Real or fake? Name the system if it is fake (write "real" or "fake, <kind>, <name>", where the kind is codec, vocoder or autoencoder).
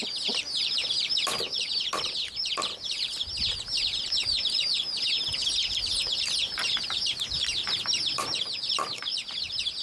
fake, vocoder, BigVGAN v2